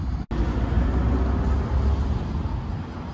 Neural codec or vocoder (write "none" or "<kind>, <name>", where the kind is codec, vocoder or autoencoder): none